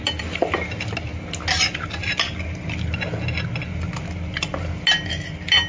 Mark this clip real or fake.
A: real